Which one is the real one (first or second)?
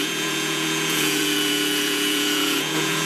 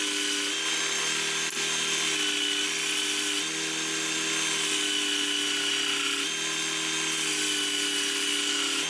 second